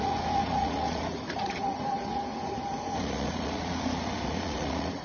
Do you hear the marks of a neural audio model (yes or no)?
yes